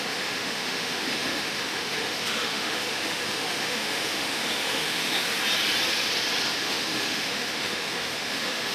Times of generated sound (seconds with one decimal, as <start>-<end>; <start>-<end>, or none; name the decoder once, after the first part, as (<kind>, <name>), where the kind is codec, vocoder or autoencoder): 0.0-5.3 (autoencoder, DAC-VAE); 6.6-8.7